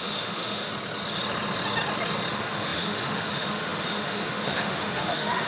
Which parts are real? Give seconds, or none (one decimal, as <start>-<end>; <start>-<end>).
0.7-2.3